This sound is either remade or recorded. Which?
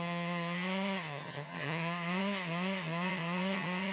remade